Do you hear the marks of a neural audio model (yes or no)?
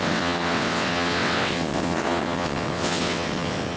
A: yes